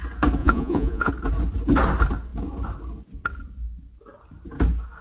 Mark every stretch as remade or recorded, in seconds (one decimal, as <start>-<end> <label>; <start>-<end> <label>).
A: 0.0-0.4 recorded; 0.4-1.1 remade; 1.1-5.0 recorded